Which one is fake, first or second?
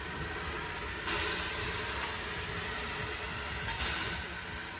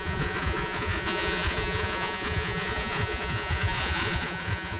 second